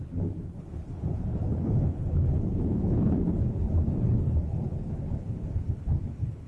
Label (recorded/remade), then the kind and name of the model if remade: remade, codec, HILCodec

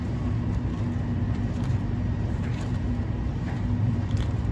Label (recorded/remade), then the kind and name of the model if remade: remade, vocoder, BigVGAN v2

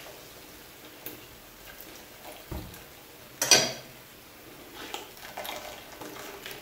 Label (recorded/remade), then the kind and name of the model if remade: recorded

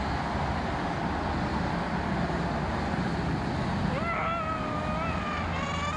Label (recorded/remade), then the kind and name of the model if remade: recorded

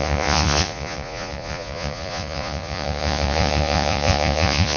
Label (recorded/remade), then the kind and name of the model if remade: remade, vocoder, Vocos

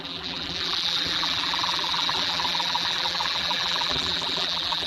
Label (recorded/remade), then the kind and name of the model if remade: remade, vocoder, BigVGAN v2